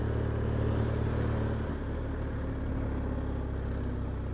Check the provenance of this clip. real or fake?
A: real